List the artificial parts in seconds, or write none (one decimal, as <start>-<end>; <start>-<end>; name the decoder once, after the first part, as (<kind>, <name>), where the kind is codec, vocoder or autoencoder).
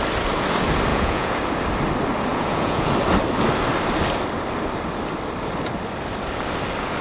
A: 0.9-1.4 (vocoder, Vocos); 2.3-2.9